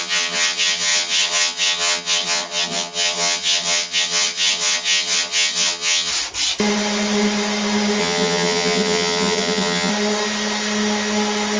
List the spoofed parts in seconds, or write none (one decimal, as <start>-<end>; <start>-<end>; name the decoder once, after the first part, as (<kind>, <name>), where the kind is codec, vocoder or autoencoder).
0.0-6.1 (vocoder, HiFi-GAN); 8.0-9.9